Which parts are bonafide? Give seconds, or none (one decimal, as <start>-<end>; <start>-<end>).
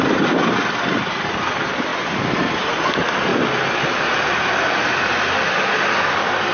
0.0-1.9; 2.9-3.3; 5.1-6.5